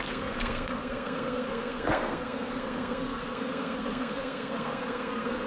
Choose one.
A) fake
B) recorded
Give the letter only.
A